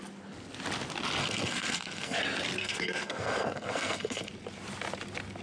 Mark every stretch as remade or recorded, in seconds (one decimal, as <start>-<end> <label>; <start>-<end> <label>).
0.0-1.2 recorded; 1.2-2.2 remade; 2.2-2.6 recorded; 2.6-4.3 remade; 4.3-5.4 recorded